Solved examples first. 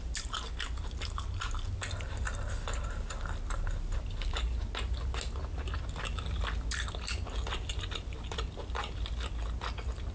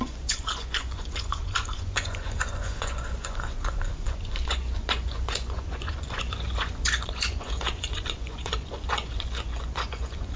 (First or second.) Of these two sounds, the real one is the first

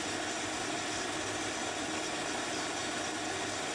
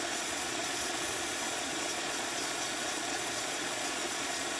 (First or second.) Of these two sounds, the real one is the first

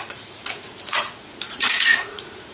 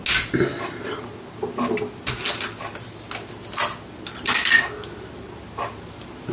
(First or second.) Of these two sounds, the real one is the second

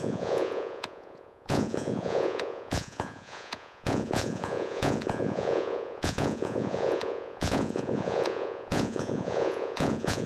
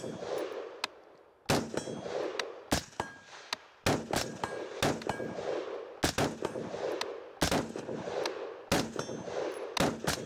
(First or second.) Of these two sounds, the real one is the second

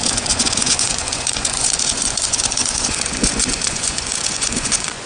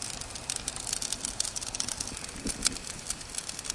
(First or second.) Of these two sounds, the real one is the second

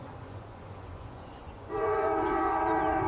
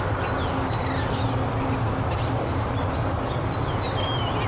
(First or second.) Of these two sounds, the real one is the second